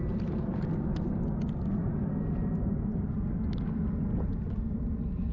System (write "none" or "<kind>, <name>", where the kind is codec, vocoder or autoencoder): none